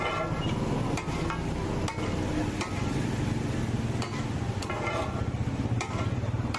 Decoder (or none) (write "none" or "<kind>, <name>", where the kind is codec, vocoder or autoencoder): none